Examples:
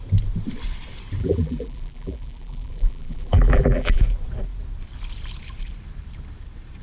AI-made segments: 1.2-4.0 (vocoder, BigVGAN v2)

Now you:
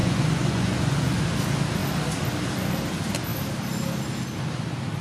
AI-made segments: 0.0-1.2 (vocoder, Vocos)

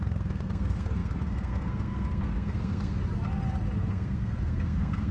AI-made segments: 0.0-3.0 (codec, SNAC); 3.9-5.1

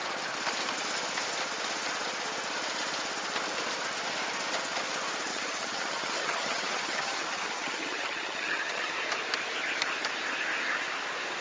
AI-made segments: 5.3-8.9 (vocoder, HiFi-GAN)

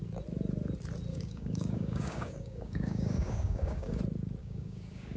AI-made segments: 1.1-4.0 (codec, DAC); 4.4-5.2